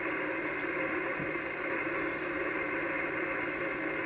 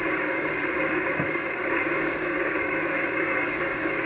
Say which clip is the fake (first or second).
second